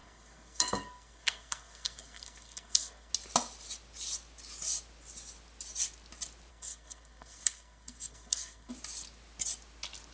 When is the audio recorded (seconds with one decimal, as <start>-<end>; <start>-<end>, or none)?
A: 3.1-6.5; 8.7-10.1